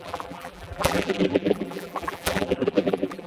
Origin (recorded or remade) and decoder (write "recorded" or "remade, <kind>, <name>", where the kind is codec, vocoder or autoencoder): remade, vocoder, BigVGAN v2